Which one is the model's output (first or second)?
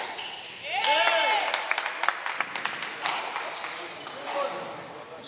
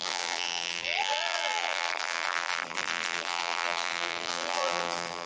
second